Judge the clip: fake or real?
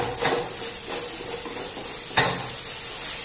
real